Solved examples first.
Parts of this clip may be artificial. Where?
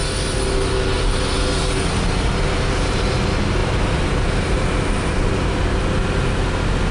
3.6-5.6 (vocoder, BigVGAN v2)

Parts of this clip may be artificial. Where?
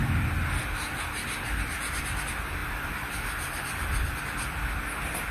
2.6-4.2 (vocoder, BigVGAN v2)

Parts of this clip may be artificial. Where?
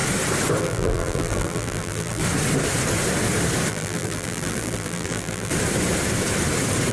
0.6-2.2 (vocoder, BigVGAN v2); 3.7-5.5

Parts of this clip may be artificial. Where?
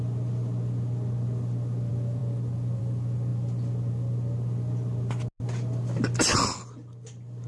none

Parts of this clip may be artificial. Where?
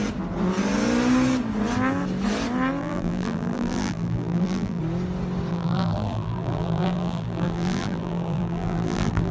2.8-4.8 (vocoder, BigVGAN v2); 5.5-9.3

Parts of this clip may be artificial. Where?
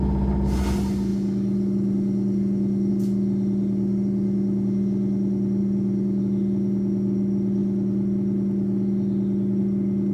none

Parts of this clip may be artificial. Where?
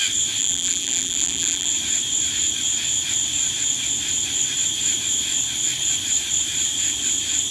0.4-1.7 (vocoder, BigVGAN v2)